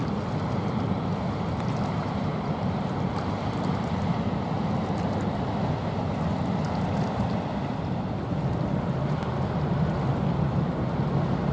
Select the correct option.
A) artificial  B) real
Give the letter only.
B